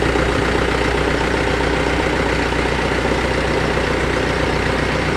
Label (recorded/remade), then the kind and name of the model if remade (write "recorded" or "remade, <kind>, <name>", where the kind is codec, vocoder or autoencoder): recorded